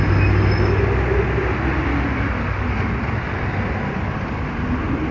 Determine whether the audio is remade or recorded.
recorded